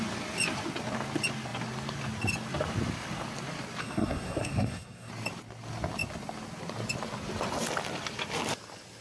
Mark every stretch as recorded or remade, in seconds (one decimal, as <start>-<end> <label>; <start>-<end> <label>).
0.0-3.8 recorded; 3.8-5.1 remade; 5.1-9.0 recorded